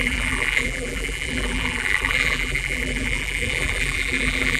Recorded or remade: remade